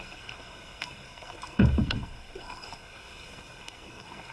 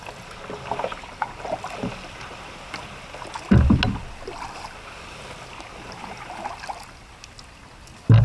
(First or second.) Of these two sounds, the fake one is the first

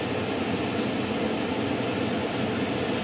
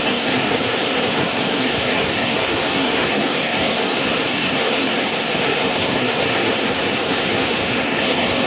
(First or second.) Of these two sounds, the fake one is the second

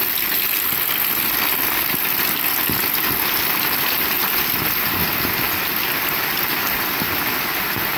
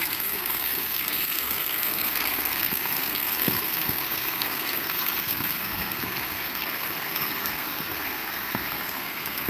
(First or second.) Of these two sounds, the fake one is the second